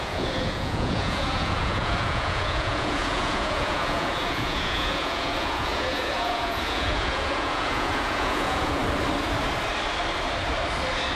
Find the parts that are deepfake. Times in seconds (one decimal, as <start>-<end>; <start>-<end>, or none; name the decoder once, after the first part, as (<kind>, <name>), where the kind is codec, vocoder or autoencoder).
0.0-8.8 (vocoder, Vocos)